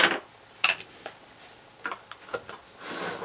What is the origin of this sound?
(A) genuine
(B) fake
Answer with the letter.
A